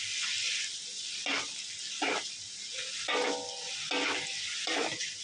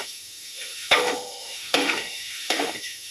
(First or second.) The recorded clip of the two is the first